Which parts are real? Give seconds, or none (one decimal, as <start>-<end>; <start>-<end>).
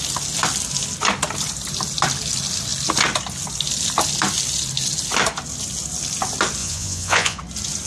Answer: 0.0-6.6; 7.4-7.9